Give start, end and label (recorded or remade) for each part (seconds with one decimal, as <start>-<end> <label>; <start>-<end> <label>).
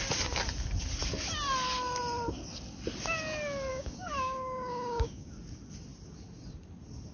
0.0-3.7 recorded; 3.7-5.3 remade; 5.3-7.1 recorded